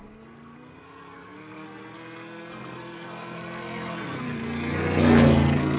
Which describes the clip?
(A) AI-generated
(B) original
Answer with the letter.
A